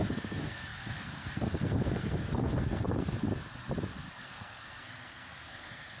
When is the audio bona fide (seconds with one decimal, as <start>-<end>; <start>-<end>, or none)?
3.3-4.1

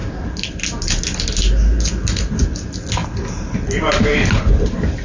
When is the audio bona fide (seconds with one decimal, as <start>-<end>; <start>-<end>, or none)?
0.0-5.0

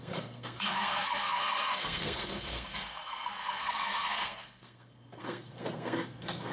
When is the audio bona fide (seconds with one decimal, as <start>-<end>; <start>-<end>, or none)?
none

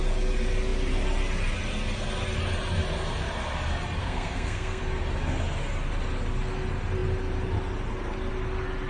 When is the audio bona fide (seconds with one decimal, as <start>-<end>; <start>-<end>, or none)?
0.0-4.0; 4.8-8.9